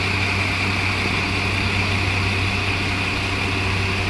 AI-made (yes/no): no